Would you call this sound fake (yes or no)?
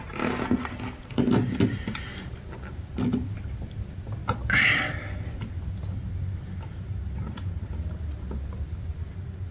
no